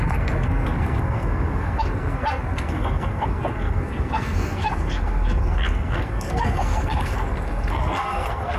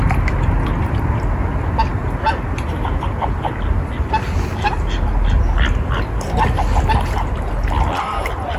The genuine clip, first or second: second